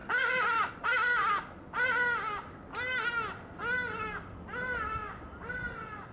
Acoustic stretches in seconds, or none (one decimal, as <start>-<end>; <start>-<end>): 0.0-6.1